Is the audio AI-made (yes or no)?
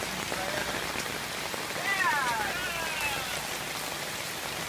no